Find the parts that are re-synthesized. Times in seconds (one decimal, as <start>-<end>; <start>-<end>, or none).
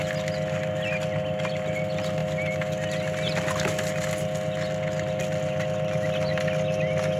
none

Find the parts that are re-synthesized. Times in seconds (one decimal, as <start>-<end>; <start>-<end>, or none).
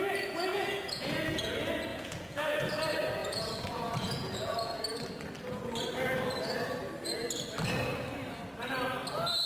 0.5-1.5; 1.9-2.7; 3.2-4.8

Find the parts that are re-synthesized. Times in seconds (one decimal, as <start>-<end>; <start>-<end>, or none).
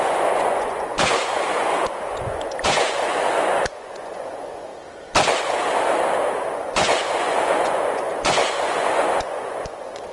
0.0-4.7; 6.5-10.1